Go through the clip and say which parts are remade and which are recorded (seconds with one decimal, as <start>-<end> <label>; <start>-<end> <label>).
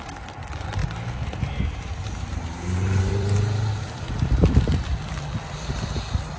0.0-0.8 recorded; 0.8-4.6 remade; 4.6-6.4 recorded